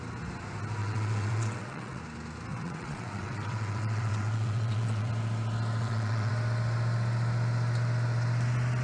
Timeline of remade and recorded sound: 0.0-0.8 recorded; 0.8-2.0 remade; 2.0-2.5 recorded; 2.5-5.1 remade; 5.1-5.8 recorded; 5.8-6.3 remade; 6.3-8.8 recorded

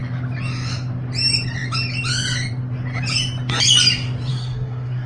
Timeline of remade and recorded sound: 0.0-4.3 recorded; 4.3-5.1 remade